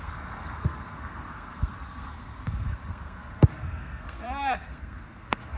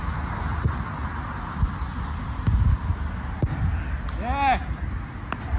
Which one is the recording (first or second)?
second